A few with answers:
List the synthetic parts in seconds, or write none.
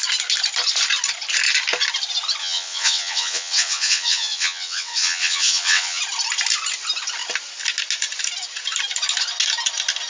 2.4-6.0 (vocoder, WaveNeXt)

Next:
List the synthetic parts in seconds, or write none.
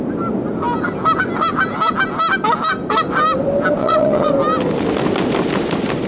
3.8-4.3 (vocoder, WaveNeXt)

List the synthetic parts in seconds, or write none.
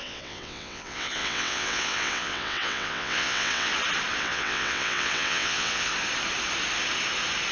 0.0-3.7 (vocoder, WaveNeXt); 4.2-5.9